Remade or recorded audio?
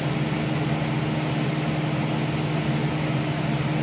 recorded